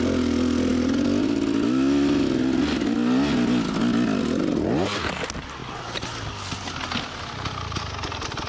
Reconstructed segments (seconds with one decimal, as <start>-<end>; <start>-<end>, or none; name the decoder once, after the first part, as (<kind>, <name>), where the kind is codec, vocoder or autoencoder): none